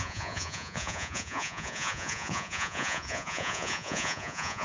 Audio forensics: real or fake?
fake